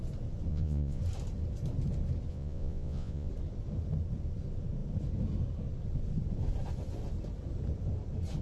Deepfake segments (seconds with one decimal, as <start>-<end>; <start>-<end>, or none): 0.5-1.0; 2.3-3.3